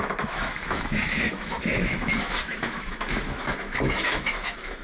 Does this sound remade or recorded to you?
remade